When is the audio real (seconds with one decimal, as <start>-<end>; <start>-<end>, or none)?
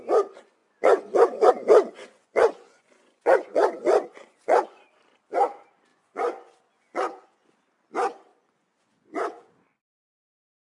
0.0-0.6; 1.5-2.0; 4.8-5.9; 7.5-8.3; 9.5-10.6